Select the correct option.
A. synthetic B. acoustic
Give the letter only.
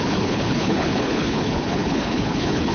A